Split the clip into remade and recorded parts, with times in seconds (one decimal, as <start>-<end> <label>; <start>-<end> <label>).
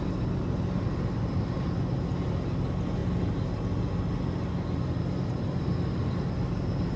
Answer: 0.0-7.0 recorded